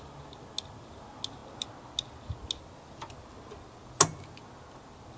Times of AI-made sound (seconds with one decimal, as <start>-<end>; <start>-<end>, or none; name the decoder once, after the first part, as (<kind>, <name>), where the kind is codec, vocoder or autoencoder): none